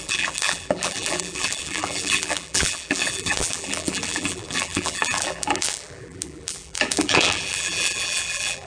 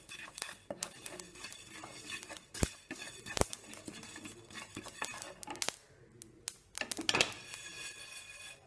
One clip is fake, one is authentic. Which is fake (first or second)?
first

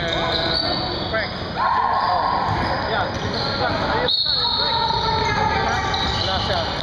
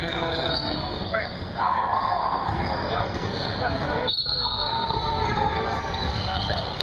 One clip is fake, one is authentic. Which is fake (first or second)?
second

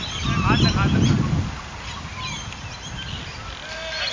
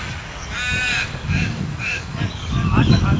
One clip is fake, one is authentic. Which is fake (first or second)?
second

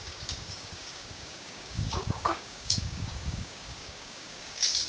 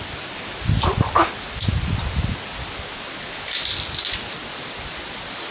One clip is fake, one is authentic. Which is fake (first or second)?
first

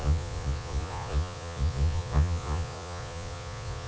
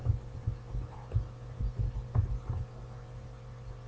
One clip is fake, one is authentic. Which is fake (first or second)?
first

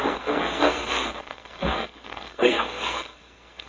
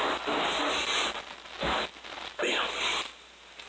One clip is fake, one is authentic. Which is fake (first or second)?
first